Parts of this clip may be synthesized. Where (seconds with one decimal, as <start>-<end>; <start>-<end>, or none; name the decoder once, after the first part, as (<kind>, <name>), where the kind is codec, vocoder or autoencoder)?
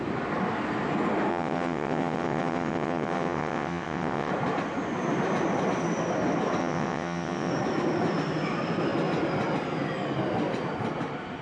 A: 1.3-4.3 (vocoder, WaveNeXt); 6.6-7.5